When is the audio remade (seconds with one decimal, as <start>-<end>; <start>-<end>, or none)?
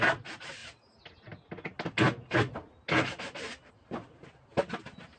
none